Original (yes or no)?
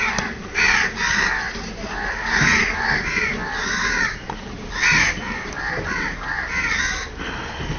yes